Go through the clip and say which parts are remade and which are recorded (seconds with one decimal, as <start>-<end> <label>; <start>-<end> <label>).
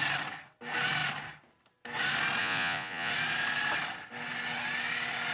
0.0-2.4 recorded; 2.4-3.1 remade; 3.1-5.3 recorded